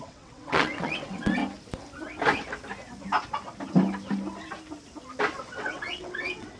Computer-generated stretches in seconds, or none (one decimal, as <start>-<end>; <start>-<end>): 0.0-1.4; 5.4-6.6